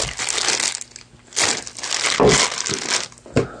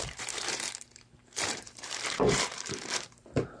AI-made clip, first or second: second